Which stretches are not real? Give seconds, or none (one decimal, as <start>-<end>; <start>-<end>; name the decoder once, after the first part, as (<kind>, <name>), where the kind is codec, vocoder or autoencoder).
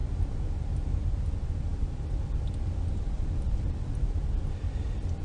none